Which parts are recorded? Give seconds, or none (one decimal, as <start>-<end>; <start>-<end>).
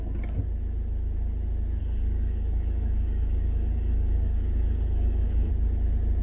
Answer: 0.0-1.8; 5.5-6.2